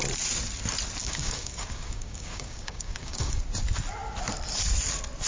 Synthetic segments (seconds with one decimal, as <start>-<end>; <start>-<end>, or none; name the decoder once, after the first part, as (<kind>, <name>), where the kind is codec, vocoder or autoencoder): 1.0-3.4 (codec, DAC)